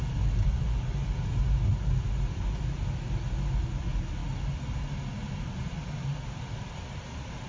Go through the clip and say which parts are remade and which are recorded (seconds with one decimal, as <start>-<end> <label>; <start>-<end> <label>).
0.0-7.5 recorded